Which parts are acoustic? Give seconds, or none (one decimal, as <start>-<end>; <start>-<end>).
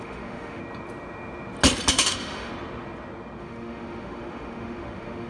0.6-1.9; 2.5-3.4